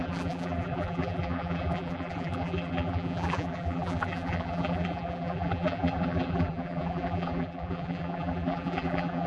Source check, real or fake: fake